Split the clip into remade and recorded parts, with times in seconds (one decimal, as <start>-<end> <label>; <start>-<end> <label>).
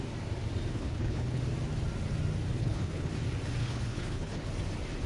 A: 0.0-0.7 recorded; 0.7-1.4 remade; 1.4-2.6 recorded; 2.6-3.1 remade; 3.1-3.6 recorded; 3.6-4.5 remade; 4.5-5.1 recorded